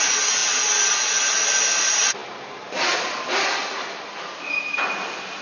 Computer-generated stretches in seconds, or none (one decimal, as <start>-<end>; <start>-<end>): none